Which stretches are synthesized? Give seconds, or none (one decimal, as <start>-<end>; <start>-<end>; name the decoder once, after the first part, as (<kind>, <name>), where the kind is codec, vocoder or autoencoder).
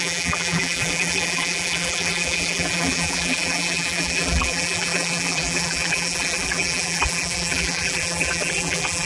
0.0-9.1 (vocoder, BigVGAN v2)